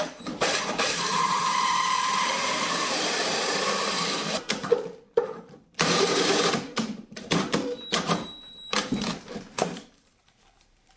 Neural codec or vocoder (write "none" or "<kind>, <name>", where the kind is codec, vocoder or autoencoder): vocoder, BigVGAN v2